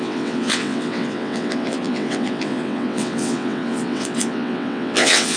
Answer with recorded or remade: remade